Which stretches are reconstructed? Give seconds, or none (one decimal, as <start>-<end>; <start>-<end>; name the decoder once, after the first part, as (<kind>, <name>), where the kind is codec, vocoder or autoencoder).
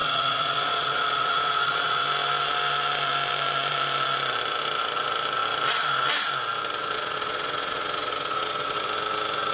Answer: 0.0-2.0 (vocoder, Vocos); 6.8-8.8